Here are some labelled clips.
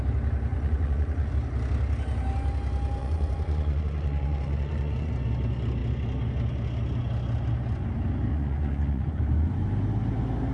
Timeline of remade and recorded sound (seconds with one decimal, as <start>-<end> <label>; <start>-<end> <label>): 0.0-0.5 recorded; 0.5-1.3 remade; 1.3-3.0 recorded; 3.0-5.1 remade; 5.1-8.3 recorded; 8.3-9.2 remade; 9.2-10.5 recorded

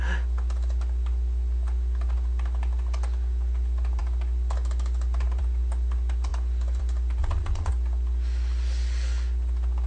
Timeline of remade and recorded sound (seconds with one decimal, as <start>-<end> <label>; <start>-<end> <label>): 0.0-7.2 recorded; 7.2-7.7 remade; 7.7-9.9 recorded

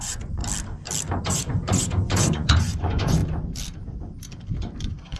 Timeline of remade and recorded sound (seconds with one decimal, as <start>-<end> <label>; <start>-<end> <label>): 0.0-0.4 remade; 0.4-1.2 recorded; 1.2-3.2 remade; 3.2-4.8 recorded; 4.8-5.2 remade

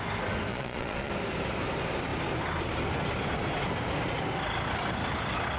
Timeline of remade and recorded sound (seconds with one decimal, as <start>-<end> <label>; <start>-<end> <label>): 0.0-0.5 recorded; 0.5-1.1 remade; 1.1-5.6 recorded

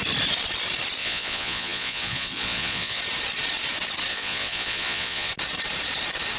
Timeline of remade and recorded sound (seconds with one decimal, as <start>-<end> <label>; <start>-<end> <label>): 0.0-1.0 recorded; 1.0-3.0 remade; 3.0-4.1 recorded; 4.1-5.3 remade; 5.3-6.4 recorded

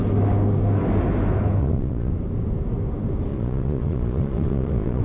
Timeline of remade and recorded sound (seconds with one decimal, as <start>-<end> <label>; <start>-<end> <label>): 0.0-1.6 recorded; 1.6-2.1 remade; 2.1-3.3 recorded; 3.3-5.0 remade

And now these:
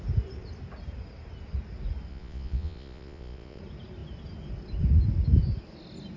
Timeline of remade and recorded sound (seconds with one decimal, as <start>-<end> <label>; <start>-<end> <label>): 0.0-2.1 recorded; 2.1-3.6 remade; 3.6-6.2 recorded